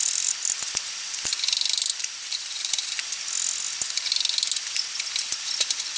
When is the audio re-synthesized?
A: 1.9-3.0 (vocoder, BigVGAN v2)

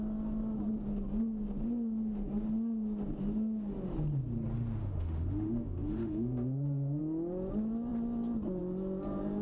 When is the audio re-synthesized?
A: 4.8-7.0 (autoencoder, DAC-VAE)

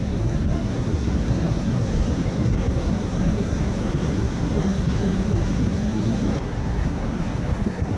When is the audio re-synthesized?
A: 0.0-8.0 (codec, SNAC)

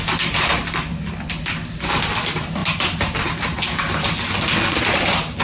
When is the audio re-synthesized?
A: none

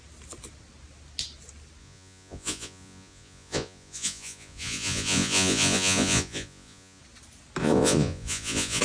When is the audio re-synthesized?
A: 1.8-7.0 (vocoder, Vocos); 7.6-8.8

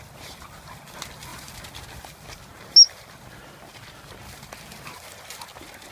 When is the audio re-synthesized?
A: none